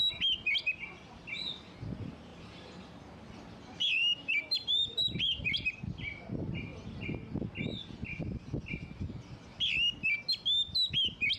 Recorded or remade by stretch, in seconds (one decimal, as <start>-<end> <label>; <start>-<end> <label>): 0.0-2.3 recorded; 2.3-3.0 remade; 3.0-4.0 recorded; 4.0-5.8 remade; 5.8-11.4 recorded

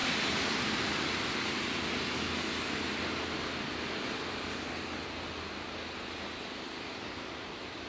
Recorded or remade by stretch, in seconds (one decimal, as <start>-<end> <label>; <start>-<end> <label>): 0.0-0.6 remade; 0.6-7.9 recorded

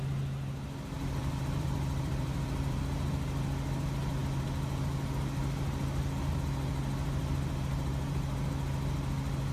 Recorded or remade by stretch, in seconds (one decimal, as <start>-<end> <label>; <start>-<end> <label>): 0.0-1.2 recorded; 1.2-2.8 remade; 2.8-9.5 recorded

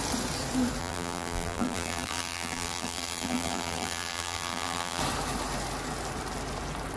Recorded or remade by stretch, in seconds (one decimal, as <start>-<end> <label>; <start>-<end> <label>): 0.0-0.8 recorded; 0.8-5.0 remade; 5.0-7.0 recorded

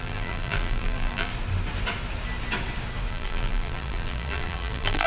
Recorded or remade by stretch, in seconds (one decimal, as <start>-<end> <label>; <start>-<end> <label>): 0.0-1.3 remade; 1.3-3.1 recorded; 3.1-5.1 remade

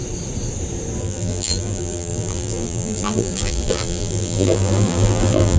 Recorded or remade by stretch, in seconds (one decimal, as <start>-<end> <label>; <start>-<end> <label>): 0.0-1.0 recorded; 1.0-5.6 remade